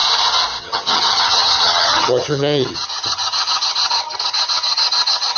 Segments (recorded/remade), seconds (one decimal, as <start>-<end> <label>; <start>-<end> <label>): 0.0-0.6 recorded; 0.6-5.4 remade